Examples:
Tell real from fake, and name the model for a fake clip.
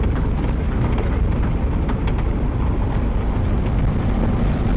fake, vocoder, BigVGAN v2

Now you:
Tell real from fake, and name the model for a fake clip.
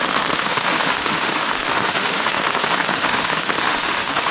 fake, autoencoder, DAC-VAE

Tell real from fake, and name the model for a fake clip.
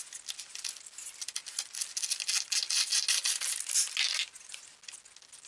real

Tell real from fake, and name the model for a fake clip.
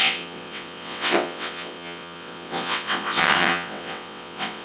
fake, vocoder, WaveNeXt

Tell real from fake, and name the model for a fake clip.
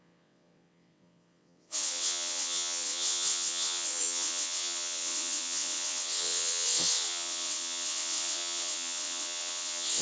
fake, vocoder, WaveNeXt